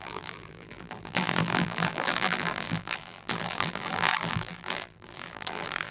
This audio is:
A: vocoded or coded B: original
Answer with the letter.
A